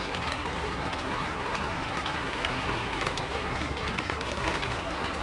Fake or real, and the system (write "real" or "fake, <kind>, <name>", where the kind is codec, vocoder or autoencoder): fake, codec, SNAC